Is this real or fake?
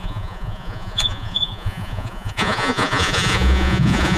fake